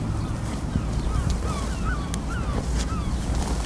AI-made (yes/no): no